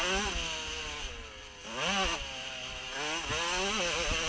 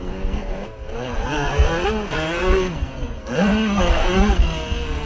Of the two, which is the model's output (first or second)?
second